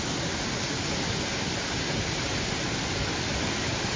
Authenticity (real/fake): real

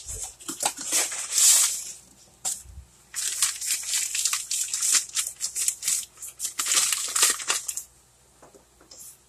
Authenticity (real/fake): real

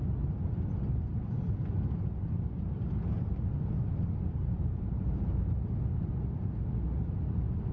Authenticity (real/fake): real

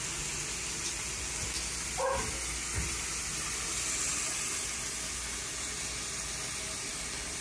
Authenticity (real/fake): real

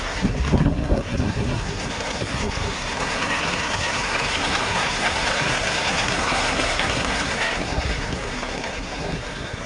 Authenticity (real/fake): fake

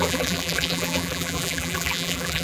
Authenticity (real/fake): fake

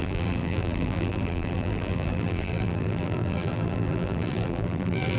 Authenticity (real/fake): fake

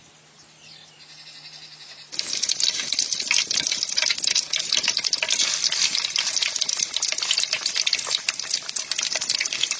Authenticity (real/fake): real